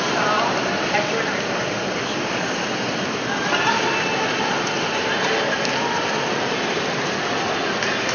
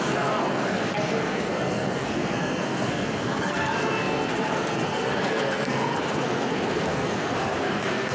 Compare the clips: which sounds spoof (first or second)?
second